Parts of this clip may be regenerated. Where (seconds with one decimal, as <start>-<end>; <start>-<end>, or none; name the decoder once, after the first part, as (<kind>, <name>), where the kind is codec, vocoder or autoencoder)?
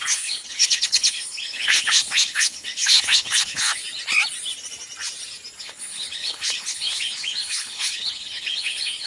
0.0-3.8 (codec, HILCodec); 5.6-9.1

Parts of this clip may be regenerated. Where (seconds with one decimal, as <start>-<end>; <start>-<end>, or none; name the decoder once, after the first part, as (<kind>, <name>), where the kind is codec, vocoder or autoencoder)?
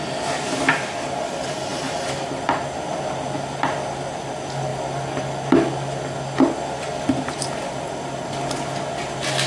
none